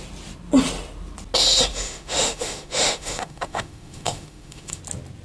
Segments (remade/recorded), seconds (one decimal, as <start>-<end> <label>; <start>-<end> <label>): 0.0-1.7 recorded; 1.7-4.8 remade; 4.8-5.2 recorded